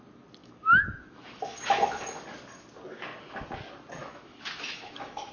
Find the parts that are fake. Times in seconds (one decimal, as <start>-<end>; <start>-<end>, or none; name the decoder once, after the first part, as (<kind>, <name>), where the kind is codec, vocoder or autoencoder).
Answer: 0.4-2.1 (autoencoder, DAC-VAE); 4.0-5.3